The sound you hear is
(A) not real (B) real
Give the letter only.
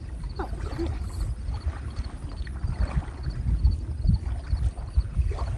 B